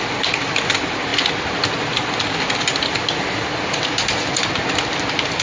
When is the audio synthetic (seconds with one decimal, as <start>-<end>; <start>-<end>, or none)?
none